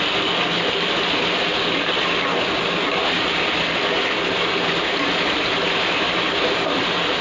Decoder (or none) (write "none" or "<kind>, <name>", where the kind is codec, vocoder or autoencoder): none